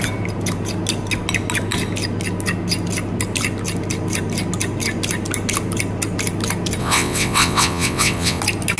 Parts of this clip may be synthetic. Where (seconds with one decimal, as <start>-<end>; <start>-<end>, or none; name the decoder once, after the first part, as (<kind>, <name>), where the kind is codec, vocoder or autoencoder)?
6.8-8.4 (vocoder, WaveNeXt)